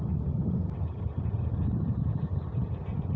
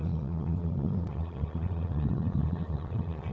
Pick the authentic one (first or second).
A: first